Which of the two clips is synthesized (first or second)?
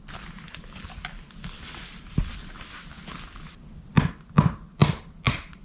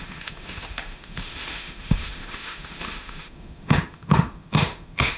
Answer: second